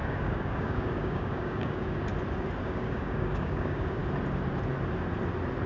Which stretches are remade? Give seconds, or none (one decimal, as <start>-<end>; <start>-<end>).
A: 0.0-2.1; 2.6-4.0